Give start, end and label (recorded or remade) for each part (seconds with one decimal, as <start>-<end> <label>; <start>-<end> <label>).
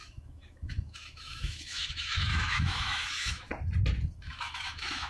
0.0-3.5 remade; 3.5-4.2 recorded; 4.2-5.1 remade